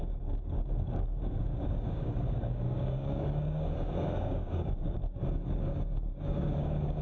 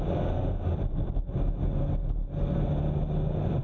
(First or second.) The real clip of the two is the second